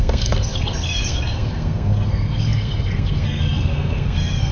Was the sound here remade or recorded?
remade